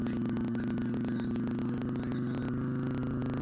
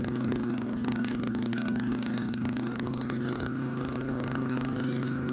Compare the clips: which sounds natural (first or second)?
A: first